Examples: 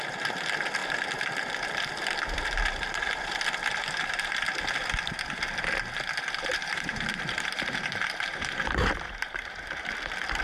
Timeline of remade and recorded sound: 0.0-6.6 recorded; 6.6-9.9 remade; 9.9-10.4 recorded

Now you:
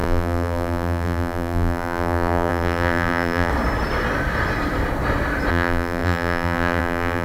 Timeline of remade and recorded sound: 0.0-3.5 remade; 3.5-5.5 recorded; 5.5-7.2 remade

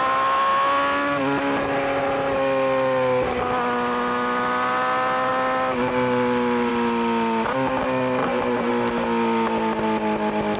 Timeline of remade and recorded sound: 0.0-8.2 recorded; 8.2-8.7 remade; 8.7-10.6 recorded

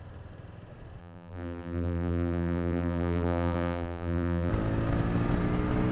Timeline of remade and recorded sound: 0.0-1.0 recorded; 1.0-4.5 remade; 4.5-5.9 recorded

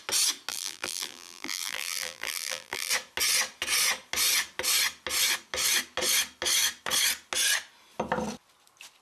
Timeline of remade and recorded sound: 0.0-0.5 recorded; 0.5-2.9 remade; 2.9-9.0 recorded

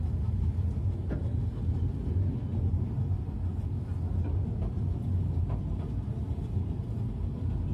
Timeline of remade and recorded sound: 0.0-7.7 recorded

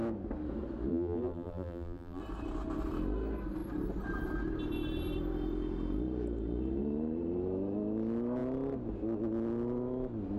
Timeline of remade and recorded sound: 0.0-0.9 recorded; 0.9-2.2 remade; 2.2-10.4 recorded